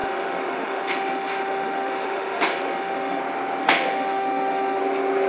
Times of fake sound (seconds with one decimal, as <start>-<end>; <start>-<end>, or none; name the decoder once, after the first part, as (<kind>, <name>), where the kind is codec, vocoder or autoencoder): 0.0-3.2 (autoencoder, DAC-VAE); 3.6-4.8